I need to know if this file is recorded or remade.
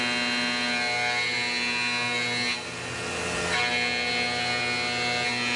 recorded